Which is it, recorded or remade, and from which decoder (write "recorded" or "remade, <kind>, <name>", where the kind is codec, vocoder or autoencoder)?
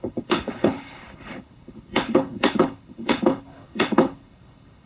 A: remade, codec, HILCodec